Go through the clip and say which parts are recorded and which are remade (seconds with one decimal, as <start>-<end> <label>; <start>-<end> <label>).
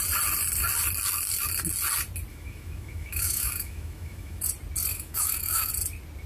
0.0-2.3 recorded; 2.3-4.4 remade; 4.4-4.9 recorded; 4.9-5.7 remade; 5.7-6.3 recorded